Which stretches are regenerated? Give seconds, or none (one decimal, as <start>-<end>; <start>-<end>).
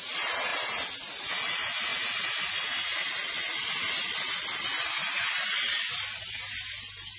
none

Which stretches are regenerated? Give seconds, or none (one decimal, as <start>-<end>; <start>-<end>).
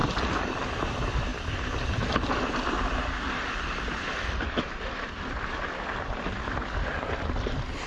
0.8-1.3; 3.3-7.9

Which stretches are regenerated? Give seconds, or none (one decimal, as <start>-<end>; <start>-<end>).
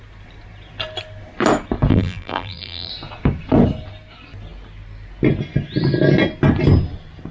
1.9-2.9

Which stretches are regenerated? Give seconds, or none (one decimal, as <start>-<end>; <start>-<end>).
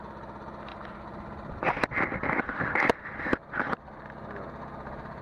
none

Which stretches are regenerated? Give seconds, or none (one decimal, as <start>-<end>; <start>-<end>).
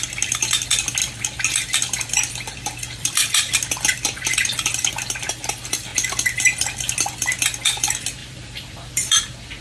1.0-4.9; 8.2-9.0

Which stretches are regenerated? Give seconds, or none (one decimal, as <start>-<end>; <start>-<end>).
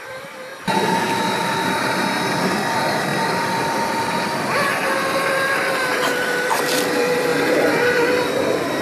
0.0-0.5; 2.4-3.1; 3.6-4.7; 6.0-8.8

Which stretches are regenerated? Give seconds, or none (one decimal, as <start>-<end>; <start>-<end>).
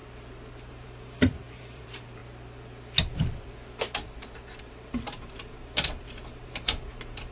0.7-2.2; 4.6-7.3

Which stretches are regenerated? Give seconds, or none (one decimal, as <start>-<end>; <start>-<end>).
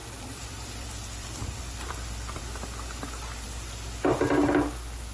0.0-2.4